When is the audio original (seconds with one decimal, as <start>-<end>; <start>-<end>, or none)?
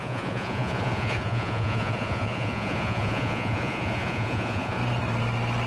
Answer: 4.8-5.7